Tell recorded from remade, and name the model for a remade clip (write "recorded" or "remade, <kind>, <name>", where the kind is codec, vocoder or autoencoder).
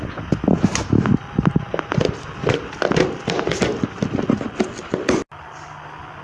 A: recorded